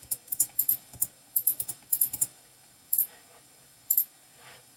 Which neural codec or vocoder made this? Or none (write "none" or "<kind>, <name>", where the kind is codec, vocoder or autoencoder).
codec, DAC